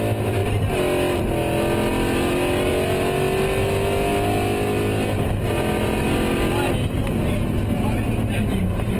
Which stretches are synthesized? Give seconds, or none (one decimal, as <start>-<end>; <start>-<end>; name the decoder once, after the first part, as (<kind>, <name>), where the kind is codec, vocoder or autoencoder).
none

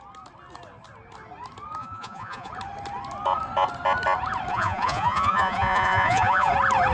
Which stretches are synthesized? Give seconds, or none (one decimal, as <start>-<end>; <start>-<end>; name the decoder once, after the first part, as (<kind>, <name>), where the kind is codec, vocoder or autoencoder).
1.8-2.5 (vocoder, Vocos); 4.5-6.5